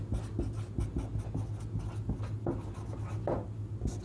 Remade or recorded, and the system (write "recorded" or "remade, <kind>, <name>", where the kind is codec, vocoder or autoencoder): recorded